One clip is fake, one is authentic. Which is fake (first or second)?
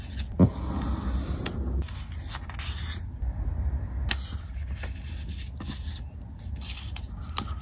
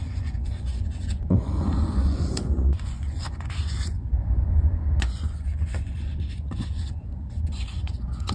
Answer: second